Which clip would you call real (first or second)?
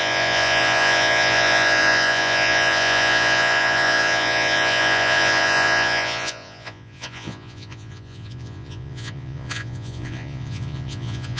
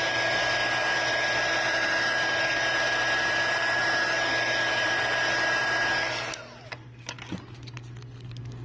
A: second